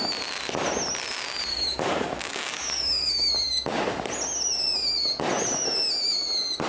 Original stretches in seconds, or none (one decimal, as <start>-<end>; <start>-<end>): 0.0-1.5; 3.3-6.7